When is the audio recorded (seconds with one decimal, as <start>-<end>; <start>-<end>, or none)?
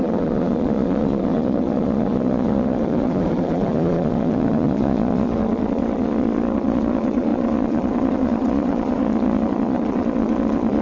none